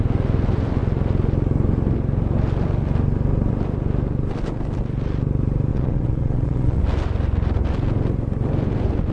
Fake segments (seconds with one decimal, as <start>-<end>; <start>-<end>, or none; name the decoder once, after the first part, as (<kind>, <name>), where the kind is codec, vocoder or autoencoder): 5.7-6.8 (vocoder, Vocos)

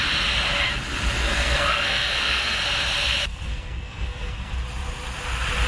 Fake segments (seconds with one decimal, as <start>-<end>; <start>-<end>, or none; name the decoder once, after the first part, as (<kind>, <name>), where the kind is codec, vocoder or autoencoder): 1.2-2.6 (codec, SNAC); 3.3-4.5